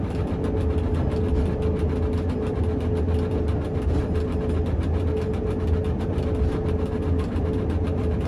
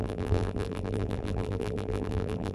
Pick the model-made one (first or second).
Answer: second